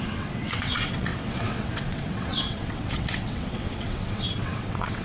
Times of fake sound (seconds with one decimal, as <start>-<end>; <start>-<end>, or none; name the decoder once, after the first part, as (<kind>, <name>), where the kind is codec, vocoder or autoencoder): 0.0-5.0 (vocoder, WaveNeXt)